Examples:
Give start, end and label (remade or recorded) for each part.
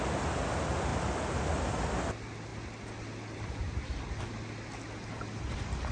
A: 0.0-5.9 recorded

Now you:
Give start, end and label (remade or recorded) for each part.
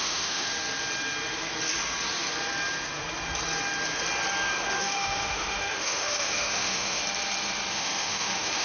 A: 0.0-0.5 remade; 0.5-4.8 recorded; 4.8-7.0 remade; 7.0-7.7 recorded; 7.7-8.6 remade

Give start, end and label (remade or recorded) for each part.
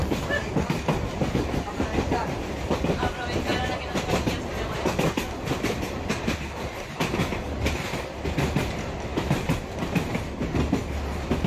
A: 0.0-11.5 recorded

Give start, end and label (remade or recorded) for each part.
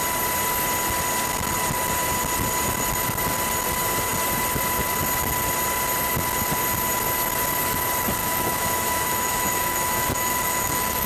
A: 0.0-8.2 recorded; 8.2-11.1 remade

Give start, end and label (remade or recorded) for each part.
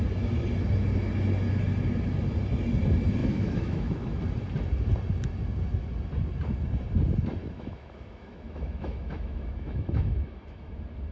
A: 0.0-3.2 recorded; 3.2-4.2 remade; 4.2-7.4 recorded; 7.4-10.7 remade; 10.7-11.1 recorded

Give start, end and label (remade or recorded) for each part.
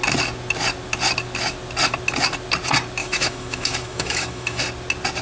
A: 0.0-3.0 recorded; 3.0-4.6 remade; 4.6-5.2 recorded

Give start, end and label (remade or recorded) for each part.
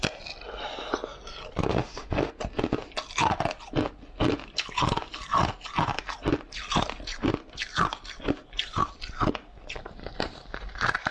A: 0.0-1.7 recorded; 1.7-2.3 remade; 2.3-11.1 recorded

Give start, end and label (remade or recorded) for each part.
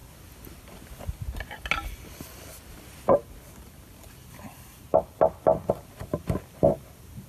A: 0.0-7.3 recorded